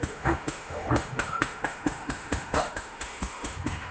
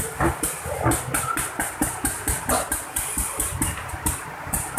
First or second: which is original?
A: second